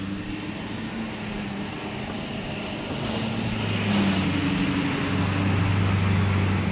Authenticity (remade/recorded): recorded